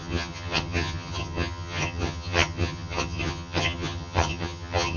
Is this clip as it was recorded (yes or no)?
no